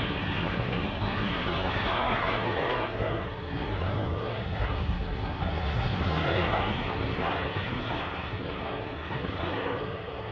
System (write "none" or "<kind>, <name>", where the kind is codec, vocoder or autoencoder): codec, SNAC